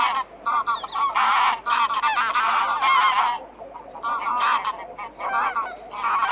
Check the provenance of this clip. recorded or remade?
recorded